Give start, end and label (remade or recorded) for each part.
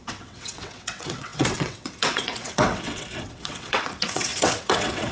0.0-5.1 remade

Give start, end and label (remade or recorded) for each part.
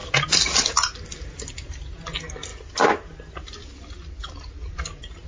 0.0-5.3 recorded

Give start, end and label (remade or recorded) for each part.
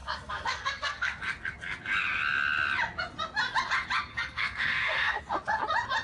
0.0-1.2 remade; 1.2-4.1 recorded; 4.1-5.2 remade; 5.2-6.0 recorded